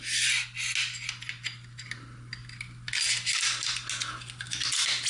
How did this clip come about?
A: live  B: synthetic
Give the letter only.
A